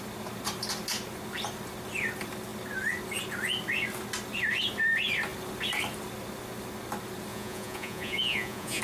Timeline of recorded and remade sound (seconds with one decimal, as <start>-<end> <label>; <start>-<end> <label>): 0.0-7.3 recorded; 7.3-8.8 remade